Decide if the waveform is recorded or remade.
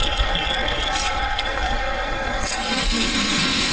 remade